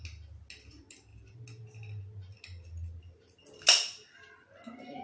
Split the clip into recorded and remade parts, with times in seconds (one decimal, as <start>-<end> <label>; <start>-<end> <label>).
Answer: 0.0-5.0 recorded